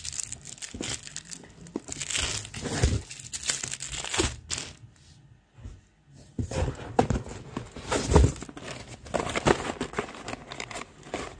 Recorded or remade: recorded